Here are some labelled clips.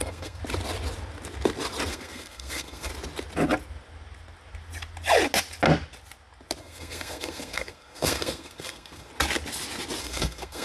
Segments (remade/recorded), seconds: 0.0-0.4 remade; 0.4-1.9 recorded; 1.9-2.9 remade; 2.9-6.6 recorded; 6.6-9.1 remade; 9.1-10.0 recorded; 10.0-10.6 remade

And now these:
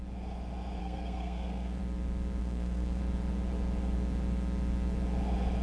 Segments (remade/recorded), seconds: 0.0-0.8 recorded; 0.8-1.8 remade; 1.8-2.4 recorded; 2.4-3.0 remade; 3.0-5.6 recorded

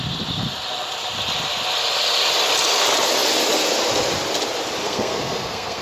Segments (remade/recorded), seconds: 0.0-4.8 recorded; 4.8-5.8 remade

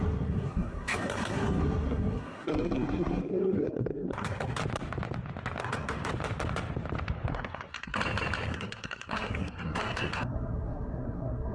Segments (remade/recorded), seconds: 0.0-4.6 remade; 4.6-5.6 recorded; 5.6-6.1 remade; 6.1-7.3 recorded; 7.3-7.9 remade; 7.9-8.5 recorded; 8.5-11.5 remade

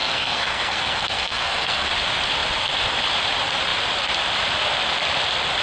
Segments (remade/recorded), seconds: 0.0-1.9 remade; 1.9-5.6 recorded